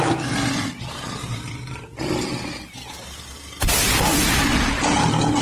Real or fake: real